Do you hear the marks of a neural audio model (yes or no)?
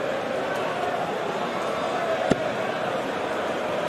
no